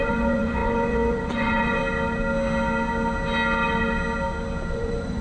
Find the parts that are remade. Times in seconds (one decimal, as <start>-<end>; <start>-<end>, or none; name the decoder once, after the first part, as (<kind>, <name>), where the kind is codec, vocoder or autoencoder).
0.0-1.8 (vocoder, Vocos); 4.7-5.2